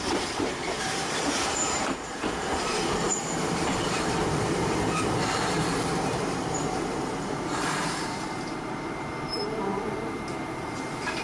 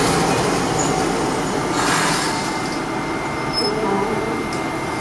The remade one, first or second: first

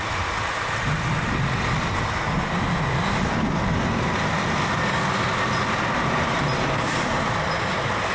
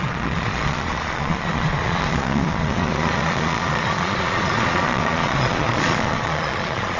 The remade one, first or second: second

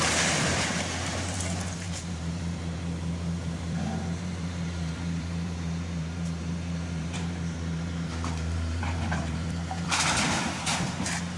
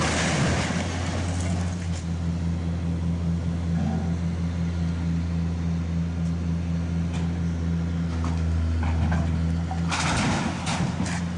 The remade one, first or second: first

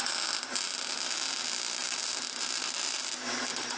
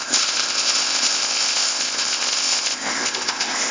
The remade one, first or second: second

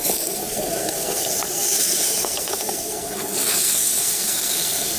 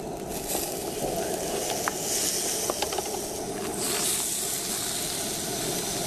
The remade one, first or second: first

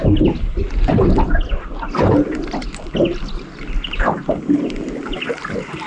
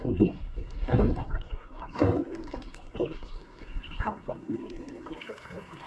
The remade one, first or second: second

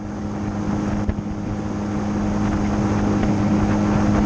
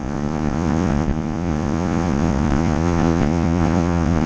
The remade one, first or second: second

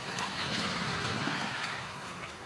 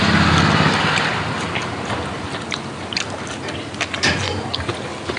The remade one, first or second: first